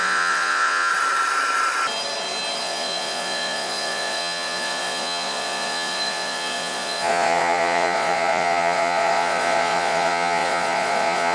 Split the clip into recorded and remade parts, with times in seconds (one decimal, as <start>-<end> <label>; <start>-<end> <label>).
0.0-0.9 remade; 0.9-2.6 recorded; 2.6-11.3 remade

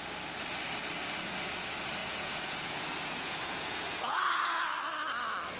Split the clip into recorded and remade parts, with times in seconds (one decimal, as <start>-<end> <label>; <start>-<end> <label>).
0.0-2.0 recorded; 2.0-4.6 remade; 4.6-5.6 recorded

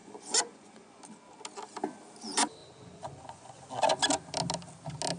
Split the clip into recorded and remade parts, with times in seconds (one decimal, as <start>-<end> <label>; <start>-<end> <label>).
0.0-1.0 remade; 1.0-2.6 recorded; 2.6-3.7 remade; 3.7-5.2 recorded